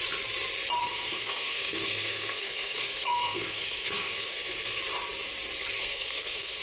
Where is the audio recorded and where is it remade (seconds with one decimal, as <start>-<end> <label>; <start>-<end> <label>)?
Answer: 0.0-0.8 recorded; 0.8-4.8 remade; 4.8-5.8 recorded; 5.8-6.6 remade